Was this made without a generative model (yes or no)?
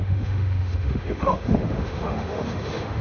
no